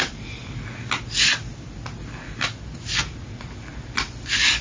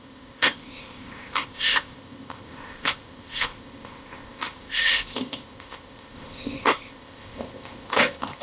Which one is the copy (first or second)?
second